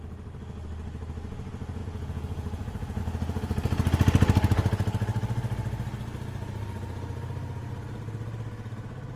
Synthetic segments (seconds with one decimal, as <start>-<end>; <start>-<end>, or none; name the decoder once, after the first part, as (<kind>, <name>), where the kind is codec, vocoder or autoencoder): 1.8-3.0 (vocoder, Vocos)